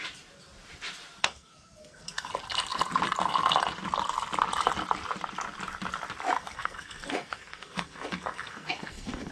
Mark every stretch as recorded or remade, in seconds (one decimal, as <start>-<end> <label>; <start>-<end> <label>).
0.0-1.2 recorded; 1.2-2.3 remade; 2.3-6.4 recorded; 6.4-9.3 remade